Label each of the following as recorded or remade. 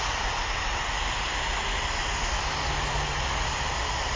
recorded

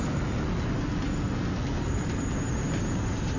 recorded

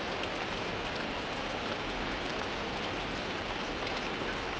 remade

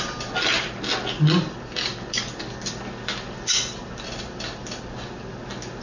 recorded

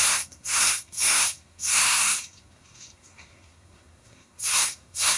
remade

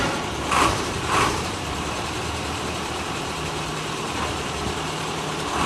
remade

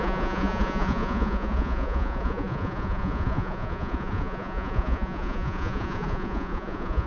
remade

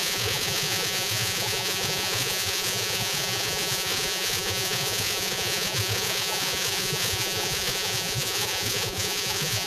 remade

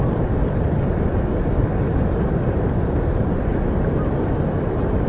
recorded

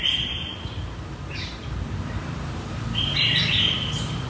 recorded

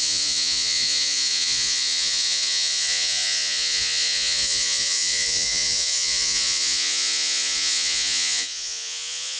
remade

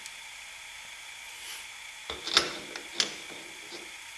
recorded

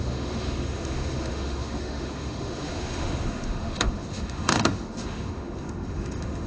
remade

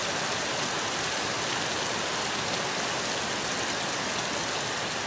recorded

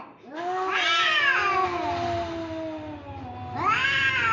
recorded